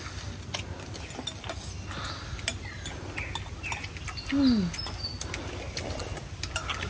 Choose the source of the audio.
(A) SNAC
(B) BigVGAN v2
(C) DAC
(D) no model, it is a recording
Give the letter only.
D